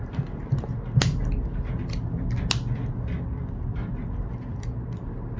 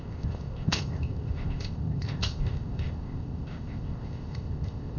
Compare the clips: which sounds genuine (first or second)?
first